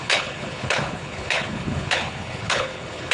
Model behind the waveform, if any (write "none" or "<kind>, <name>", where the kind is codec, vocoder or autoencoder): codec, HILCodec